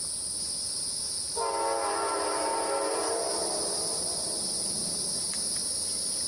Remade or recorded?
recorded